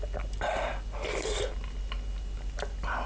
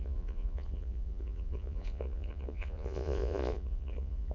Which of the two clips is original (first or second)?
first